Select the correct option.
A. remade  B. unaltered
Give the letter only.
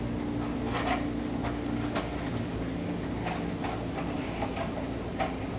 B